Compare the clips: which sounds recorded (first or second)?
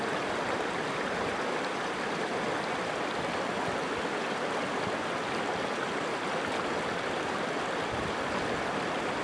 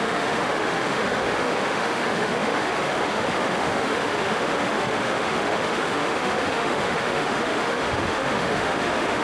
first